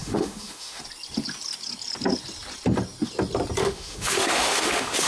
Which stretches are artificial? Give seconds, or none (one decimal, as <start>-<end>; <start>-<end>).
0.0-0.8; 3.6-5.1